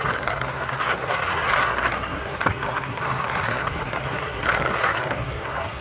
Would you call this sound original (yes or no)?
no